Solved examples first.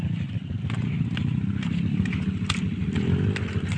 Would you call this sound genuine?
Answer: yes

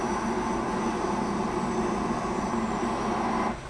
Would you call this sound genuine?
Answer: yes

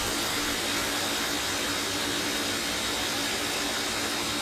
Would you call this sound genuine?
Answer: yes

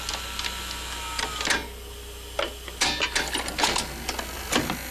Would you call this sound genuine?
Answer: yes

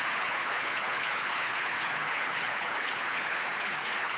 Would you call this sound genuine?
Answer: no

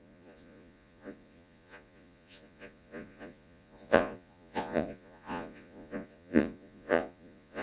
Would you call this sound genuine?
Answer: no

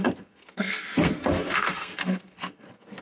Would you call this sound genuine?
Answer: no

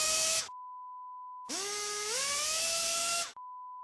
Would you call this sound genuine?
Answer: no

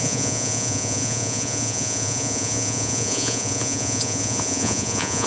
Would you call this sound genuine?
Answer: no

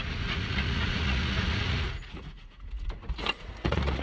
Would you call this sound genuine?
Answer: no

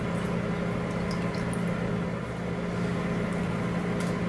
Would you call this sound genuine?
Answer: yes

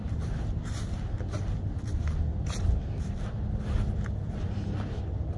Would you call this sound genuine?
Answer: yes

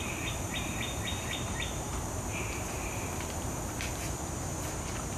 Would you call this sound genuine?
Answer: no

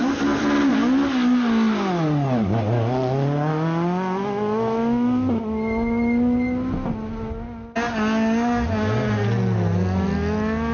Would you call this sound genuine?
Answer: yes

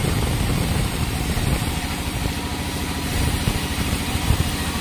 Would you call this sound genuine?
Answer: no